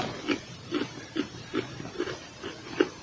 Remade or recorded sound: recorded